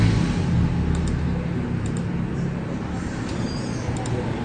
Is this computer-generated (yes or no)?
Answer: no